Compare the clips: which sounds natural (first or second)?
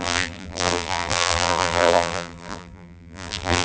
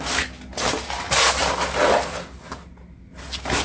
second